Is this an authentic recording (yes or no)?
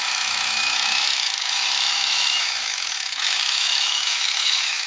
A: no